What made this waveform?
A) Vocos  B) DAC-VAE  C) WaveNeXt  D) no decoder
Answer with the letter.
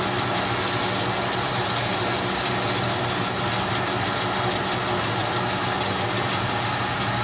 D